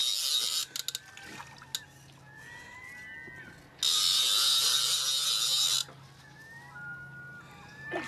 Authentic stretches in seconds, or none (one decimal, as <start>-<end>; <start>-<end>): 0.0-8.1

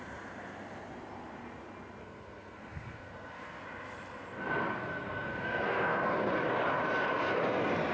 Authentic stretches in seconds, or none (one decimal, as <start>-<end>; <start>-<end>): 0.0-2.0; 3.6-4.8; 6.3-7.9

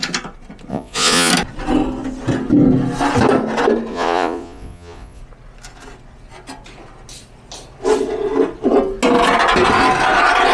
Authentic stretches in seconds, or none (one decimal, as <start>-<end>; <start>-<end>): 0.0-0.7; 1.3-3.9; 5.2-10.5

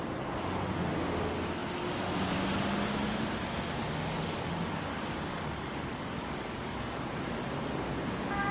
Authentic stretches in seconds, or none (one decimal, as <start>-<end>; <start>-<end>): 0.0-4.9; 7.1-8.5